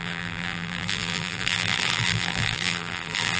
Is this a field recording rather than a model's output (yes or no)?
no